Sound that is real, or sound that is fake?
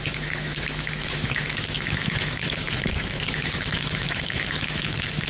fake